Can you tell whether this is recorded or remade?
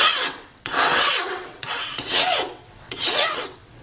remade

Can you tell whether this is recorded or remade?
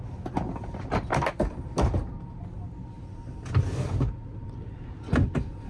recorded